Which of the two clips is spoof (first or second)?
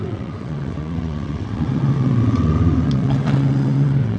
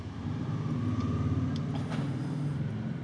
first